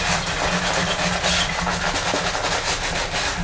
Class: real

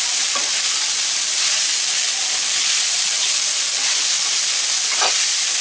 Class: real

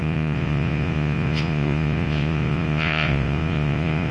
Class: fake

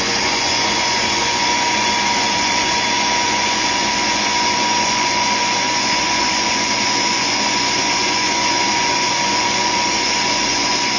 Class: fake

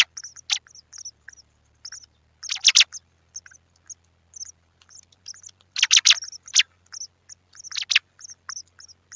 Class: real